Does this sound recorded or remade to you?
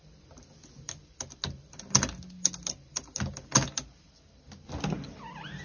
recorded